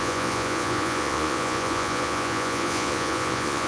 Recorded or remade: remade